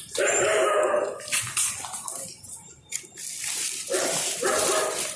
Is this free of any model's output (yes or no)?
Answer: no